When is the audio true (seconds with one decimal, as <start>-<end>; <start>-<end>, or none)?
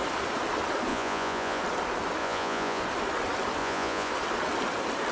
0.0-0.9; 1.6-2.2; 2.8-3.6; 4.1-5.1